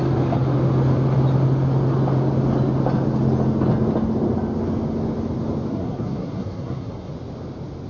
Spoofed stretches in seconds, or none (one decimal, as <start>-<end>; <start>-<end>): 5.7-7.1

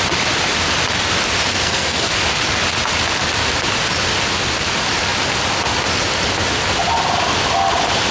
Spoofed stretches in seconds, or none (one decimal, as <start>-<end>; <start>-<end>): 1.5-2.1

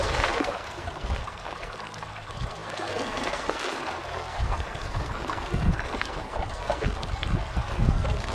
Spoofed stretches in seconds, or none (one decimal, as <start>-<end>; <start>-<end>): 0.0-8.3

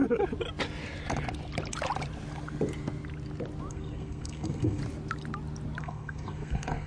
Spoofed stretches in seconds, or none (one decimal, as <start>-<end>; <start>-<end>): 3.7-4.8; 5.8-6.9